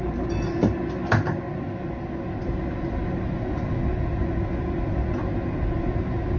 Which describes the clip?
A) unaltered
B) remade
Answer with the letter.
A